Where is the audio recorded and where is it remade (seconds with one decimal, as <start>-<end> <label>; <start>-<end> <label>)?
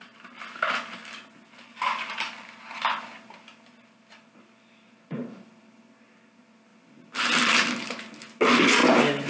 0.0-9.3 recorded